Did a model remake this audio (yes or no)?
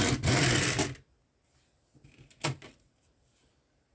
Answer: no